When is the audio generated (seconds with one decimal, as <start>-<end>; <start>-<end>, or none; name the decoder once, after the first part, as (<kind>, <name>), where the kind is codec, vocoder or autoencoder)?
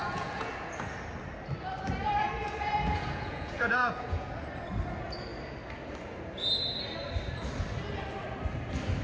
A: 0.0-0.5 (vocoder, Vocos); 2.4-4.4